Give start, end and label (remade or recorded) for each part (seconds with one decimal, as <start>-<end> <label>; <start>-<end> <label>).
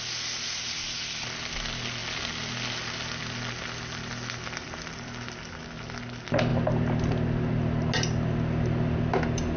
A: 0.0-9.6 recorded